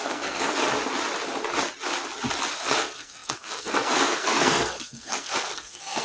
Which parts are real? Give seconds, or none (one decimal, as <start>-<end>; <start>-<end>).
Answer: 0.6-2.5